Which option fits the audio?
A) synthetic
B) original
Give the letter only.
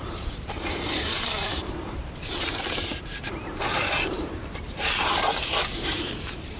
A